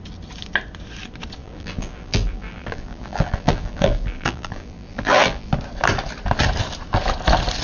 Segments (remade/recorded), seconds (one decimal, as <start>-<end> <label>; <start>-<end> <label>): 0.0-1.4 recorded; 1.4-5.5 remade; 5.5-7.6 recorded